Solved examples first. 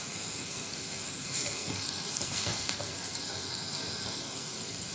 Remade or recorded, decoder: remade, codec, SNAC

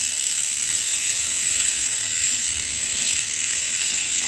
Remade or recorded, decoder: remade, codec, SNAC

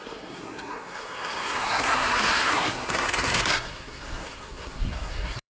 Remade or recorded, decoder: remade, codec, SNAC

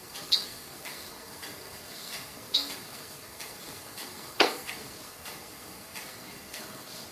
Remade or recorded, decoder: remade, codec, SNAC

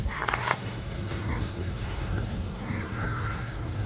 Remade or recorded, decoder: remade, codec, SNAC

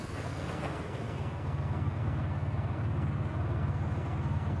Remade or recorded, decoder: remade, codec, SNAC